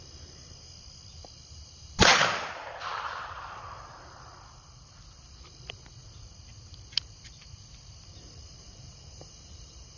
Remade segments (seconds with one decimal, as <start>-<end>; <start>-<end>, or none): none